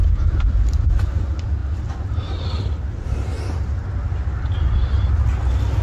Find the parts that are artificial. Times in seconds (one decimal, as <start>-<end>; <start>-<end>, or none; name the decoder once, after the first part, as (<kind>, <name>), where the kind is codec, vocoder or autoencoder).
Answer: 0.0-0.5 (vocoder, Vocos)